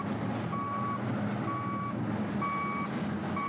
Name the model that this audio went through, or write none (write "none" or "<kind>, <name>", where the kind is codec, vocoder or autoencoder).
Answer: none